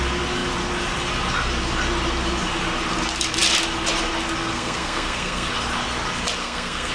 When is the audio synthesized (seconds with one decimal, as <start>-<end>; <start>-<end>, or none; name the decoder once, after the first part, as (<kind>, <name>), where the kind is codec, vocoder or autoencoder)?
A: 4.4-5.5 (codec, SNAC); 6.4-6.9